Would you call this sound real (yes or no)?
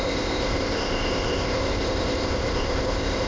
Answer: no